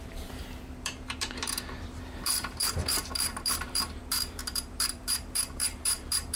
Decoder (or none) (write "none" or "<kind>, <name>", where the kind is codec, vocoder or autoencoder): vocoder, BigVGAN v2